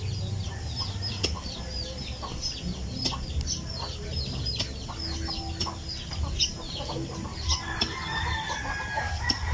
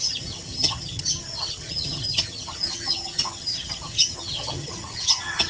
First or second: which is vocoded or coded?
second